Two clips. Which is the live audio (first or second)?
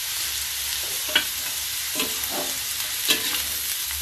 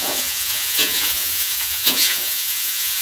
first